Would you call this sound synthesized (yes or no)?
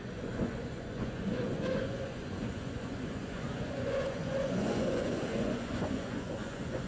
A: yes